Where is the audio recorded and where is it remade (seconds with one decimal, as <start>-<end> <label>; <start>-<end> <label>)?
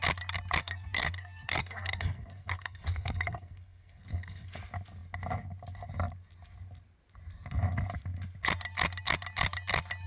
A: 0.0-0.6 recorded; 0.6-4.6 remade; 4.6-10.1 recorded